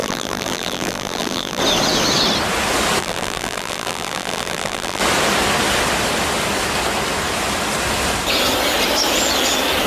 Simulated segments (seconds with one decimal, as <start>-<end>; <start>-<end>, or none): 0.0-1.6; 3.0-5.0